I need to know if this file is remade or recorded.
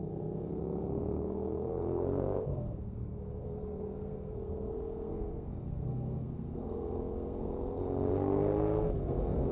remade